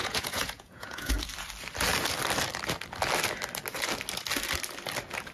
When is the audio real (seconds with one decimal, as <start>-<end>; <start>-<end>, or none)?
1.1-5.3